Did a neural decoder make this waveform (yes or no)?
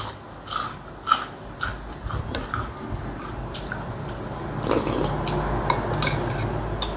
no